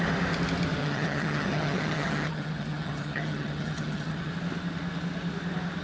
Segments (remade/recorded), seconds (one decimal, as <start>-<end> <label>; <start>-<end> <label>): 0.0-0.8 recorded; 0.8-4.3 remade; 4.3-5.8 recorded